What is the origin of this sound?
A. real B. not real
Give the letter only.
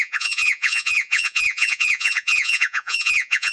B